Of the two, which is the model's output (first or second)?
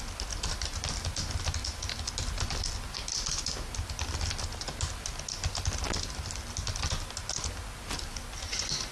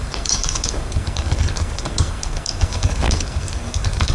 second